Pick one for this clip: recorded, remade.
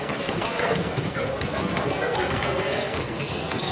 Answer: remade